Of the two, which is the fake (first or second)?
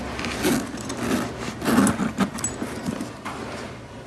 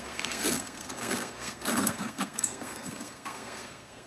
second